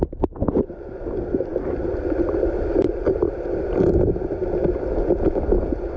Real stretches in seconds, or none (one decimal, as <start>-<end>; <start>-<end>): 0.0-6.0